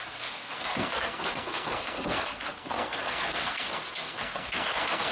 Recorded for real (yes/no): no